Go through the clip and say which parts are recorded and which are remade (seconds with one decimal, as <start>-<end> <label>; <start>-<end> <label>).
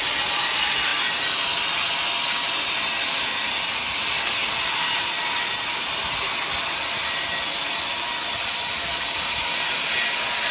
0.0-10.5 recorded